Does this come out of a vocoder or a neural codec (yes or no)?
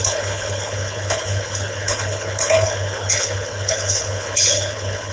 yes